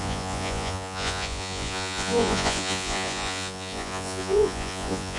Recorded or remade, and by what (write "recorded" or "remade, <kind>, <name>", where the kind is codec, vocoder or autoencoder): remade, vocoder, Vocos